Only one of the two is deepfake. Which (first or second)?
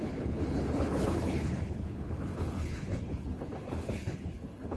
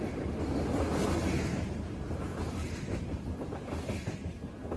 first